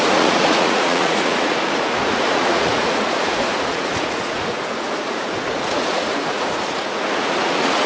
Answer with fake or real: fake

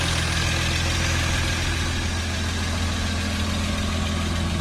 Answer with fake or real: real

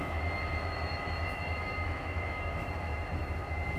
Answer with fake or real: fake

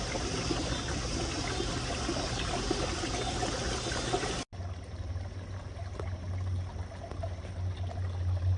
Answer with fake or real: real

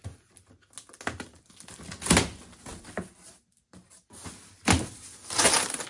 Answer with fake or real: real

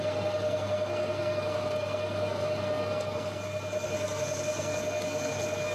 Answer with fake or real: fake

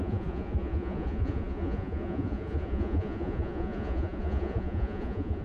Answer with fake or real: fake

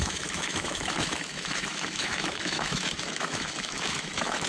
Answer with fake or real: fake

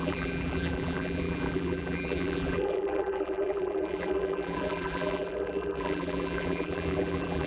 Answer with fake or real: fake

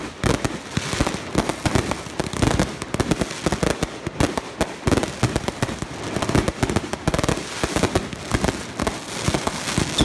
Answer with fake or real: real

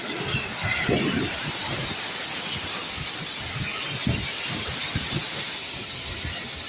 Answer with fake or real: real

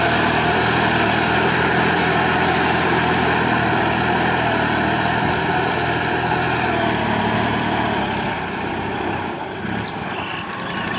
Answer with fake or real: fake